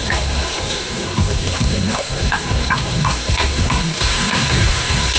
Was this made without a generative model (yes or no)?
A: no